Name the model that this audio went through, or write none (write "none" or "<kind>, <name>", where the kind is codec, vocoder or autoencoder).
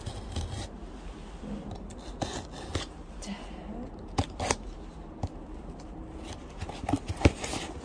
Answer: none